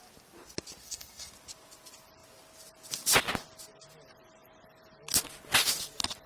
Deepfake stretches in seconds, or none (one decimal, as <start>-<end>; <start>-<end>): 0.8-1.3